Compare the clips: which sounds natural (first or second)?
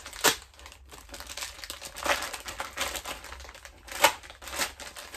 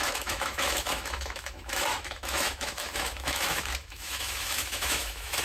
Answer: first